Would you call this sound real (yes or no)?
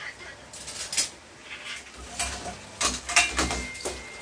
yes